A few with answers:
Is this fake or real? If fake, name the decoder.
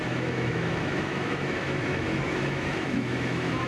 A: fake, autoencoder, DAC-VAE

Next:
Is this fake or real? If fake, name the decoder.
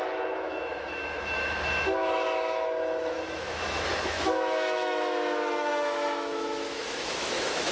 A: fake, autoencoder, DAC-VAE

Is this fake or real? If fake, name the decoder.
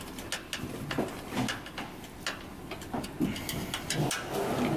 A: real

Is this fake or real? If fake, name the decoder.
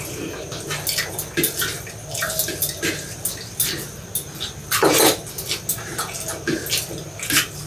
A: real